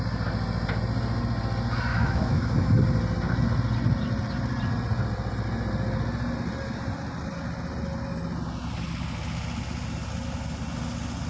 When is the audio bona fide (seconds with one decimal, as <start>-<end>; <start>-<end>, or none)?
0.0-1.9; 2.8-11.3